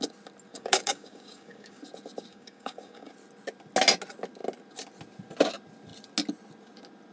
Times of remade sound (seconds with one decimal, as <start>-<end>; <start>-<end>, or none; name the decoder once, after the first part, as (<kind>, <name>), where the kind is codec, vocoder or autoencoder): 0.5-1.8 (codec, DAC); 2.3-3.1